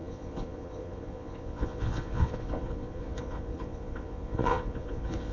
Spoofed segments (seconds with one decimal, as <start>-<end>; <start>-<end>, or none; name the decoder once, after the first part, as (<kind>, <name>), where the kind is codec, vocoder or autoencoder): 0.0-5.3 (vocoder, Vocos)